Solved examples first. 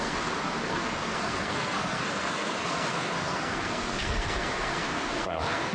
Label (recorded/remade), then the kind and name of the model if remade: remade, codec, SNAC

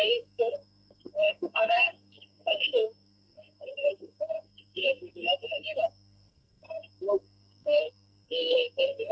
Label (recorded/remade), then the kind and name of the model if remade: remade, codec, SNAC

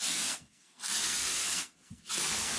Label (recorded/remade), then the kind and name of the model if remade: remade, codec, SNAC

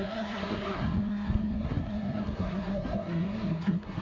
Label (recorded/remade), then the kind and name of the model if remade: remade, codec, SNAC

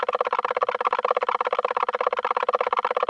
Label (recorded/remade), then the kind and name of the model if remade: recorded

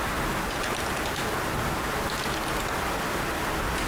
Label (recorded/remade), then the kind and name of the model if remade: recorded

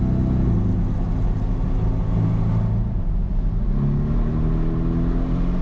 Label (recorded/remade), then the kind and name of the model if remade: recorded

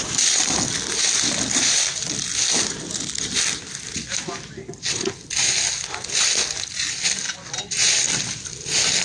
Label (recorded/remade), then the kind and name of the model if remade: recorded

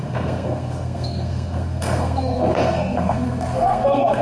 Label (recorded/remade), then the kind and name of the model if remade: remade, codec, SNAC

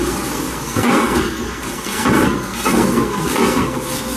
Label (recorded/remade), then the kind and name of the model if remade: remade, codec, SNAC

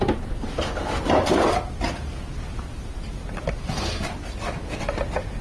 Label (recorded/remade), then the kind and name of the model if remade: recorded